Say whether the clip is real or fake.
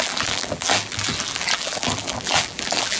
fake